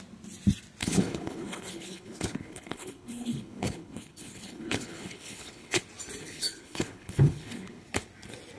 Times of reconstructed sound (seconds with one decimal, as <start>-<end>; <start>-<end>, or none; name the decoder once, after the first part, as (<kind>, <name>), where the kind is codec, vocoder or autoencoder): 0.8-5.8 (codec, HILCodec); 6.2-7.8